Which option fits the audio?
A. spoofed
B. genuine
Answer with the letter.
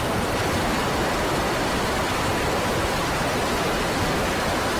B